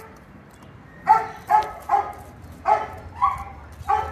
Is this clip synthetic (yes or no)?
no